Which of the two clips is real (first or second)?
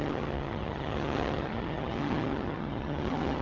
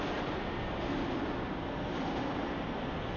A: second